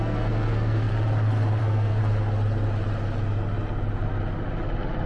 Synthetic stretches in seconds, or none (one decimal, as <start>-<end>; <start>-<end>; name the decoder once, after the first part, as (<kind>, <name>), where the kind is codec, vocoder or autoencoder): 0.0-0.9 (codec, SNAC); 1.6-2.0